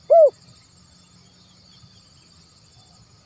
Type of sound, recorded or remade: recorded